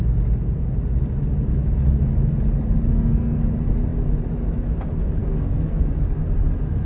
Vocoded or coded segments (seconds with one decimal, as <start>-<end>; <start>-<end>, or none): 2.9-3.4; 5.2-5.8